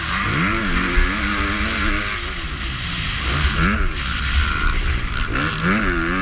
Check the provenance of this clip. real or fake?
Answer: real